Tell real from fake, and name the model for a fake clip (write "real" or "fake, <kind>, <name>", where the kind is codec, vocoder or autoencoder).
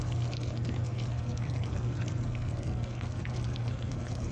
fake, codec, SNAC